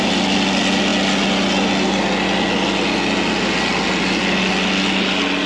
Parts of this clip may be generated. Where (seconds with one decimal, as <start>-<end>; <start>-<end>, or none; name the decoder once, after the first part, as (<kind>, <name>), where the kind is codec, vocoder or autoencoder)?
none